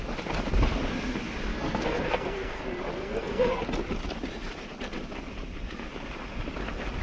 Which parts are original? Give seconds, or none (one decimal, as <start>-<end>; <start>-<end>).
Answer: 0.0-1.5; 2.6-3.0; 3.6-7.0